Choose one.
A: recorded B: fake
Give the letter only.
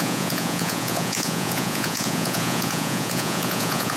B